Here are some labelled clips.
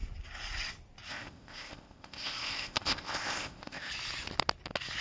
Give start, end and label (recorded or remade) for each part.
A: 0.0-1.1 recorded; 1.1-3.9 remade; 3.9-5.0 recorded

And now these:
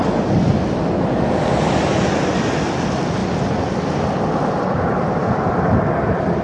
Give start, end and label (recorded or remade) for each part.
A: 0.0-6.4 recorded

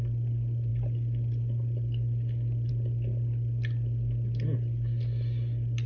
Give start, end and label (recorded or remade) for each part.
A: 0.0-5.9 recorded

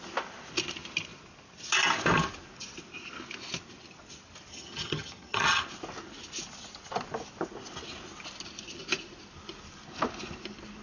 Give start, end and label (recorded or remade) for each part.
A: 0.0-4.5 recorded; 4.5-5.6 remade; 5.6-10.8 recorded

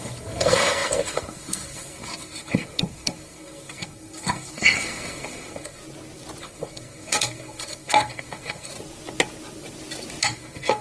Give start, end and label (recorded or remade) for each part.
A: 0.0-5.8 remade; 5.8-6.4 recorded; 6.4-8.7 remade; 8.7-10.2 recorded; 10.2-10.8 remade

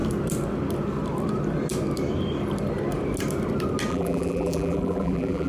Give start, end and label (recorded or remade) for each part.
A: 0.0-3.9 recorded; 3.9-5.5 remade

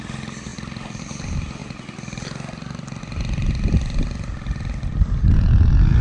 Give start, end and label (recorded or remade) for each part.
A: 0.0-0.5 recorded; 0.5-1.0 remade; 1.0-6.0 recorded

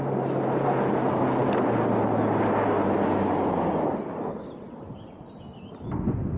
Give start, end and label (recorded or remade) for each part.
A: 0.0-6.4 recorded